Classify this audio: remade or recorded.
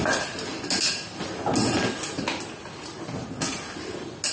recorded